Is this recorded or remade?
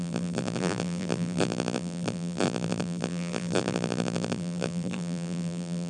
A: remade